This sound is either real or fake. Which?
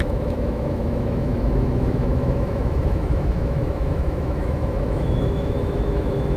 fake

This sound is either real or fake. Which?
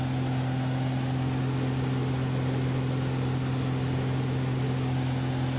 real